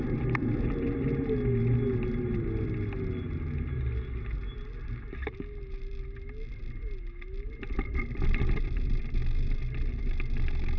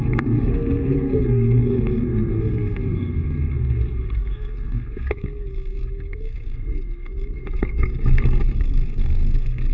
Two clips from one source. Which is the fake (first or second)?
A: second